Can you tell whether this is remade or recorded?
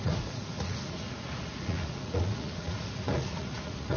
remade